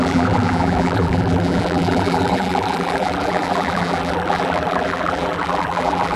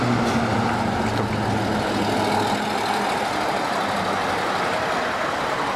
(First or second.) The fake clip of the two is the first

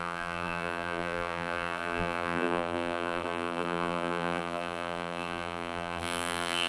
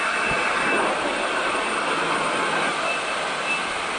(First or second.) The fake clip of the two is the first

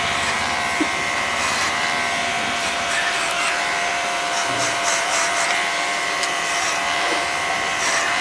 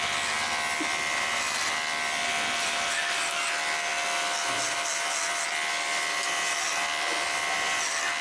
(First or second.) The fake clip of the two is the first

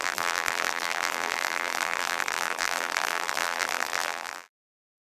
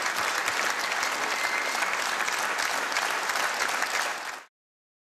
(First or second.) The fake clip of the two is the first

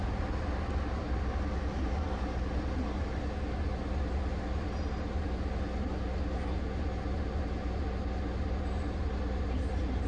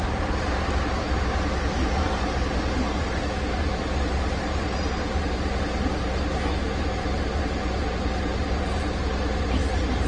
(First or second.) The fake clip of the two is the second